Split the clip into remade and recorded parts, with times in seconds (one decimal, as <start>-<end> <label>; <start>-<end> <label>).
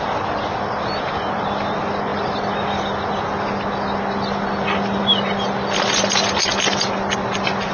0.0-7.7 recorded